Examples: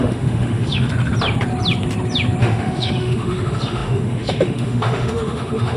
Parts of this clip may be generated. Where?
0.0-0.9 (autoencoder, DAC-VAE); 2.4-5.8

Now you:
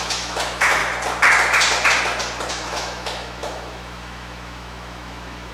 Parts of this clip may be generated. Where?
0.0-0.8 (autoencoder, DAC-VAE); 2.5-5.5

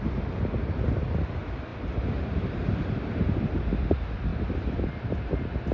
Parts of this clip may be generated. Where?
none